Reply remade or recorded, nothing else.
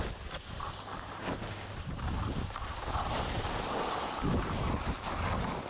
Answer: recorded